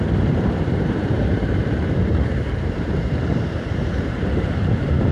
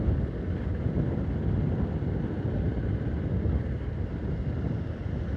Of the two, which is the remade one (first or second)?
first